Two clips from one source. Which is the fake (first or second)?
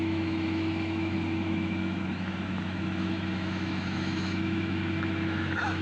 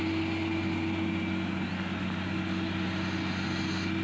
first